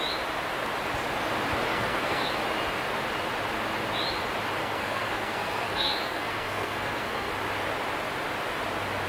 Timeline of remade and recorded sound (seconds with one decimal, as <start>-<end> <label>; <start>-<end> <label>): 0.0-1.7 recorded; 1.7-2.3 remade; 2.3-4.6 recorded; 4.6-7.3 remade; 7.3-9.1 recorded